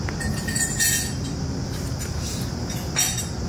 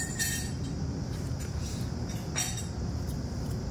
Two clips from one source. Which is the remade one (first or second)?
second